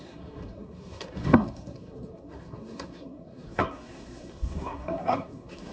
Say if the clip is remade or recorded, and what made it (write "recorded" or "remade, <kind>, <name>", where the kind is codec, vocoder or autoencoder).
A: remade, codec, SNAC